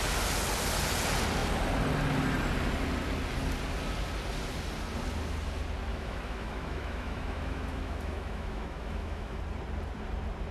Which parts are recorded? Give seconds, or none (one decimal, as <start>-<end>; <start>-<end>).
0.0-5.9; 9.4-10.5